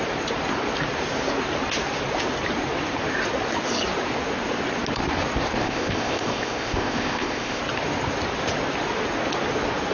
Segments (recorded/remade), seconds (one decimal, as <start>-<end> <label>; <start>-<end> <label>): 0.0-5.6 recorded; 5.6-7.6 remade; 7.6-9.9 recorded